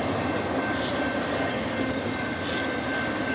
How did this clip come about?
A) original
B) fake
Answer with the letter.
A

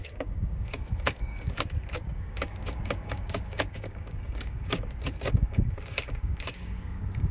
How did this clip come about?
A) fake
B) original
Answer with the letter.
A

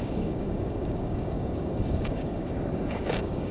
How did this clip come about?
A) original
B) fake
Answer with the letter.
B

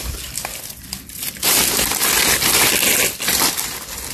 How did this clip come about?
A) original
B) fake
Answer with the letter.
A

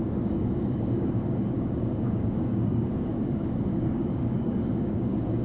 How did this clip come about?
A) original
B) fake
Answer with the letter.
B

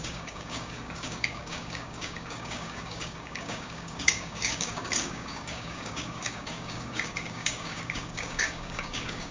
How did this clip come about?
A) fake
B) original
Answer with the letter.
A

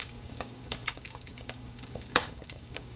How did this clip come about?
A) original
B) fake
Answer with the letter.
B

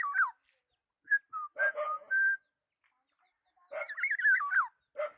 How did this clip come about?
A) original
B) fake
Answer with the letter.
A